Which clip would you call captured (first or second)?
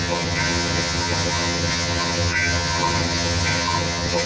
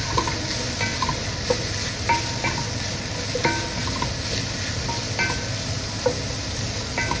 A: second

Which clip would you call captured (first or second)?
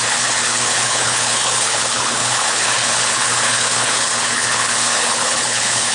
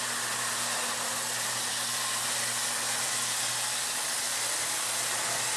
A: second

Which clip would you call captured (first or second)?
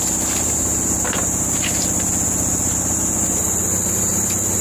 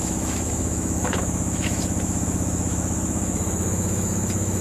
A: first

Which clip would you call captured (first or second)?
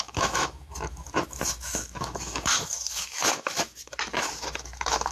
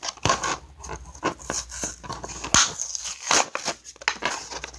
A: second